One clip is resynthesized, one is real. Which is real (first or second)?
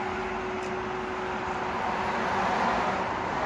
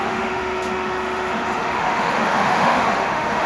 first